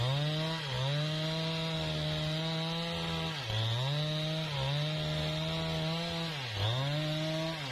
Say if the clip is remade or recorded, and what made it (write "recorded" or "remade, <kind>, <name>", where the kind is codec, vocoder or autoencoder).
recorded